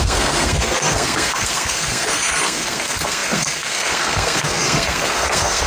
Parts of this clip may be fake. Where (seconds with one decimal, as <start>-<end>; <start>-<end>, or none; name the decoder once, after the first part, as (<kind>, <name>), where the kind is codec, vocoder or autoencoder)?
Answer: 0.0-5.7 (codec, SNAC)